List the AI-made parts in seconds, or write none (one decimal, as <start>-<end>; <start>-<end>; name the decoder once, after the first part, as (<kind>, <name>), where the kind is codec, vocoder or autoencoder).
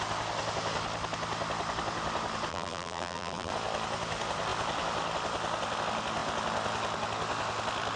2.5-3.5 (vocoder, BigVGAN v2)